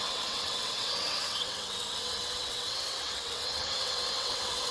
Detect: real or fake fake